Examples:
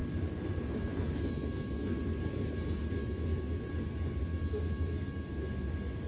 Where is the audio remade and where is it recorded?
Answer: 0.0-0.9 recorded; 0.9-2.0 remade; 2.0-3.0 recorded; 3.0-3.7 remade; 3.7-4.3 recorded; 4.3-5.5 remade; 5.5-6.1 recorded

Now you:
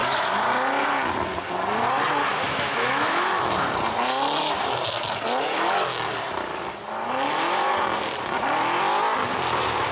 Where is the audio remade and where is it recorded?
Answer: 0.0-2.2 recorded; 2.2-3.5 remade; 3.5-9.9 recorded

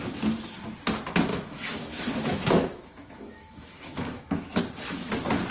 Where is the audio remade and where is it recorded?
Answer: 0.0-1.3 recorded; 1.3-4.6 remade; 4.6-5.5 recorded

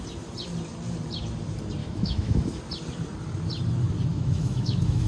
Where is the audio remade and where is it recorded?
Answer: 0.0-1.8 recorded; 1.8-2.6 remade; 2.6-4.1 recorded; 4.1-5.1 remade

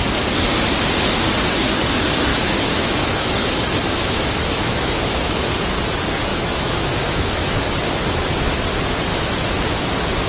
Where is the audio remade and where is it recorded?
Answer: 0.0-2.3 recorded; 2.3-5.5 remade; 5.5-6.3 recorded; 6.3-7.9 remade; 7.9-9.1 recorded; 9.1-9.6 remade; 9.6-10.3 recorded